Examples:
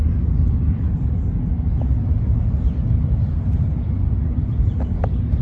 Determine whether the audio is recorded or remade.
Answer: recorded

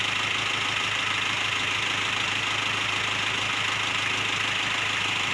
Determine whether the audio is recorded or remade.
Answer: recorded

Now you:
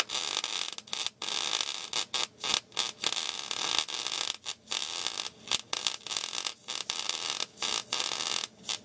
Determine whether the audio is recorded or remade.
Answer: recorded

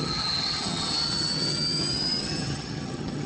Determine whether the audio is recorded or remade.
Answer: remade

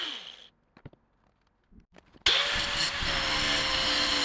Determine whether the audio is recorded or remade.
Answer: recorded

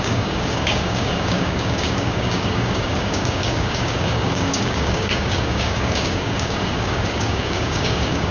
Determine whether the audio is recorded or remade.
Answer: remade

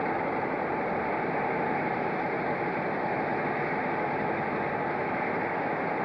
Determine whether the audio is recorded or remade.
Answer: recorded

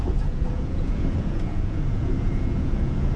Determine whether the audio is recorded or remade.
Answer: remade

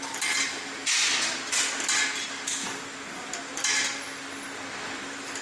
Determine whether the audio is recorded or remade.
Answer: recorded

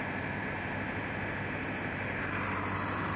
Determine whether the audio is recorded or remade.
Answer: recorded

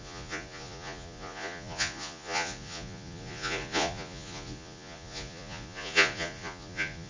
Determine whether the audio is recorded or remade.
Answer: remade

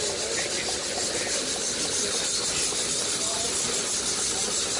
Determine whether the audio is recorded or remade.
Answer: recorded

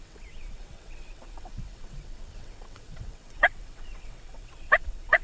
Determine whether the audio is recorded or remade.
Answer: remade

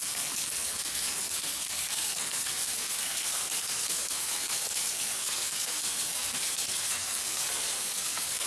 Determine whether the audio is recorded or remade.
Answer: remade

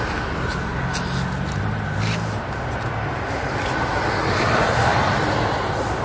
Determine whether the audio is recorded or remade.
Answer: recorded